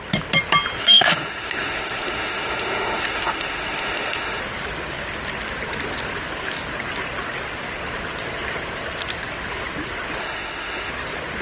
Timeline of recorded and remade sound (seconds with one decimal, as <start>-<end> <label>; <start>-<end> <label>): 0.0-0.8 recorded; 0.8-4.4 remade; 4.4-10.2 recorded; 10.2-10.9 remade; 10.9-11.4 recorded